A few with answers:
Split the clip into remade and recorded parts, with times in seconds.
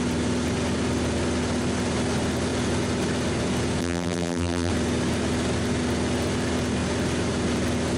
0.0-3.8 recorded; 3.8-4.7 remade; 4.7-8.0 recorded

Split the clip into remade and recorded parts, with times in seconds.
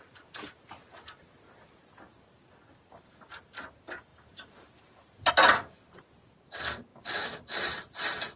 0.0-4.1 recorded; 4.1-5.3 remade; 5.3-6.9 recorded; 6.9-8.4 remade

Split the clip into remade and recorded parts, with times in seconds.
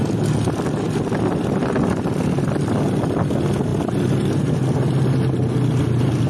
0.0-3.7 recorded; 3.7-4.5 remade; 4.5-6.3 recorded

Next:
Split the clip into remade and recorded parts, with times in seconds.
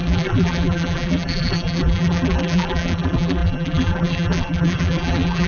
0.0-5.5 remade